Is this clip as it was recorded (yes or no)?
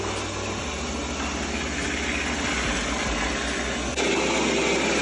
yes